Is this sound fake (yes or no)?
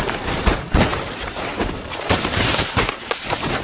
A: yes